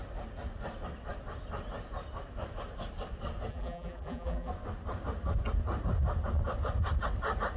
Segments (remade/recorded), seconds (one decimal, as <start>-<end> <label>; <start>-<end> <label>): 0.0-3.5 recorded; 3.5-4.5 remade; 4.5-7.6 recorded